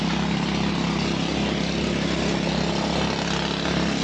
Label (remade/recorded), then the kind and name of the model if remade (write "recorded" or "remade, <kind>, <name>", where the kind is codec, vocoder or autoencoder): recorded